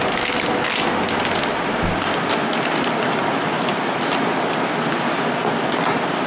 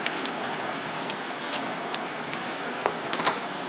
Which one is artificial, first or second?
second